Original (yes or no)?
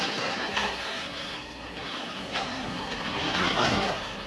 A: no